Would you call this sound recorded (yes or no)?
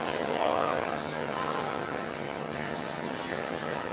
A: no